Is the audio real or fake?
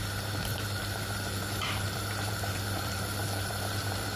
fake